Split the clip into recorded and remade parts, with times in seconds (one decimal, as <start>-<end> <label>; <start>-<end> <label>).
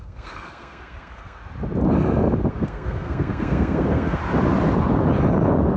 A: 0.0-1.4 remade; 1.4-2.5 recorded; 2.5-4.2 remade; 4.2-5.8 recorded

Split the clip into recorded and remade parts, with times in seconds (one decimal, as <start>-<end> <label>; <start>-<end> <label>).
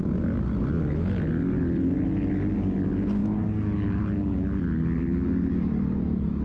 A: 0.0-6.4 recorded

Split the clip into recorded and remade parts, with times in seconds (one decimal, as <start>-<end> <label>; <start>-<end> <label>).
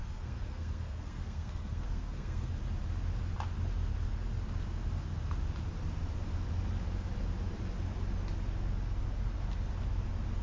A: 0.0-2.5 remade; 2.5-10.4 recorded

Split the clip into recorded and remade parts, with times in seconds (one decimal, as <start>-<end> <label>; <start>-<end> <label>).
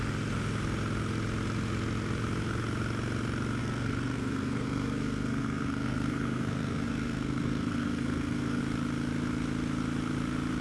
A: 0.0-3.6 recorded; 3.6-8.6 remade; 8.6-10.6 recorded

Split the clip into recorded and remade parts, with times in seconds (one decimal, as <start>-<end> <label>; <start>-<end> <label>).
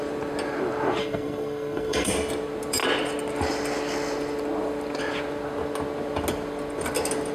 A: 0.0-1.0 recorded; 1.0-2.1 remade; 2.1-7.3 recorded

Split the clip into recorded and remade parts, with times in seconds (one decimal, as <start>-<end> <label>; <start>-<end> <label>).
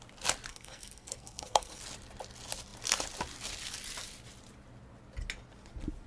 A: 0.0-0.5 recorded; 0.5-1.8 remade; 1.8-6.1 recorded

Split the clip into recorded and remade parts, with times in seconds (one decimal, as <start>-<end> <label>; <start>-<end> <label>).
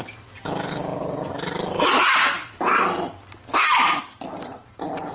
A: 0.0-5.1 recorded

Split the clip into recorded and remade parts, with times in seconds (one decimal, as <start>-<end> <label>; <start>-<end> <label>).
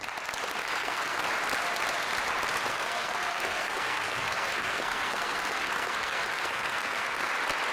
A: 0.0-0.6 recorded; 0.6-1.3 remade; 1.3-2.7 recorded; 2.7-7.3 remade; 7.3-7.7 recorded